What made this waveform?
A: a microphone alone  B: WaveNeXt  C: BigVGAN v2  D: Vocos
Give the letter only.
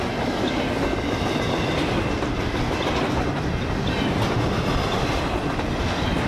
A